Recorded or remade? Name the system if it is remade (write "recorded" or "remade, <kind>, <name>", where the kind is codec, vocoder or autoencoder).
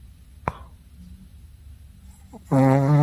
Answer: recorded